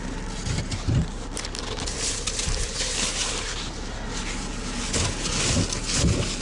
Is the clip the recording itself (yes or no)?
yes